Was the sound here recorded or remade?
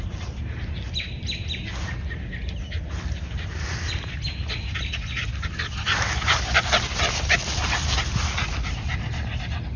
recorded